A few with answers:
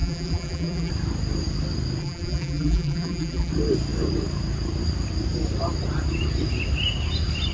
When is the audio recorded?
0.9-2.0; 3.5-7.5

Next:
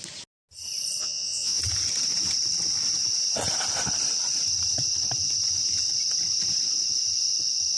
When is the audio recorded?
0.0-1.0; 1.6-7.8

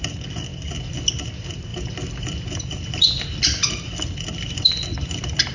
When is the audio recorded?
0.0-1.7; 2.6-5.5

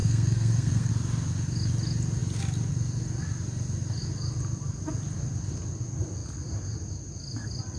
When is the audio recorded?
0.9-7.8

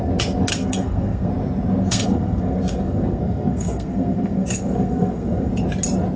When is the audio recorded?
0.0-0.5; 1.3-1.8; 5.5-6.2

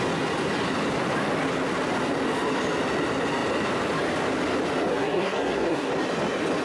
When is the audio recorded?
0.0-4.9; 5.9-6.6

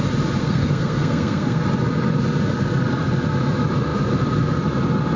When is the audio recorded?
0.0-0.4; 1.6-5.2

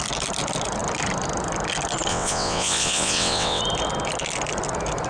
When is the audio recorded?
0.0-2.1; 3.6-5.1